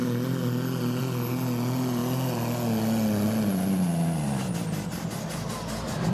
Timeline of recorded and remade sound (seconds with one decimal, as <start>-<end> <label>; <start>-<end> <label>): 0.0-6.1 recorded